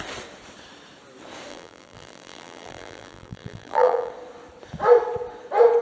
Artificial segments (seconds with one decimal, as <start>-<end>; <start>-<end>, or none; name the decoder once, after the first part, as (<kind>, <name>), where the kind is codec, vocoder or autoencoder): 1.5-4.1 (vocoder, BigVGAN v2)